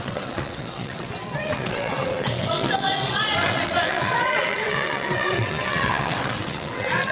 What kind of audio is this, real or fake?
fake